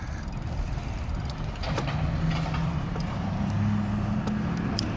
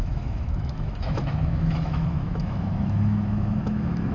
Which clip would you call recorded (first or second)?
first